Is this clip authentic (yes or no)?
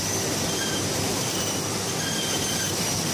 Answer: yes